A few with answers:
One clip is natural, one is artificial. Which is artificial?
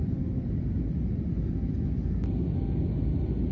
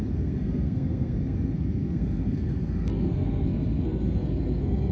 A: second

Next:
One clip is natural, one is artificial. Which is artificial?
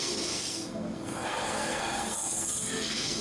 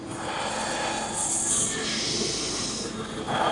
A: first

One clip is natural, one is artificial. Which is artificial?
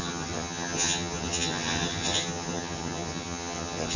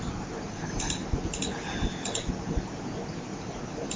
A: first